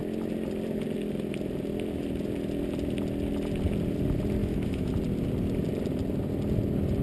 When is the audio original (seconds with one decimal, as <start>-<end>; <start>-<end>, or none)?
0.0-4.4; 4.9-7.0

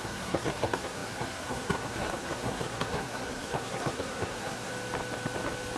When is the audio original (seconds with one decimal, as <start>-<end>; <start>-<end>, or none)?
4.7-5.8

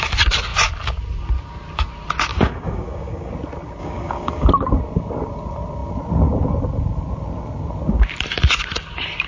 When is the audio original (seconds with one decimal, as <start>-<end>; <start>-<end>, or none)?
0.0-2.3; 3.3-3.8; 4.5-9.3

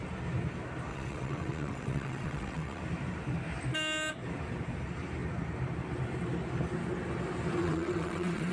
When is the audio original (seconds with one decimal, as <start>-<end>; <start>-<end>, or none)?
0.0-0.9; 2.8-7.6